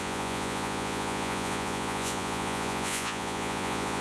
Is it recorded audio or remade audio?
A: remade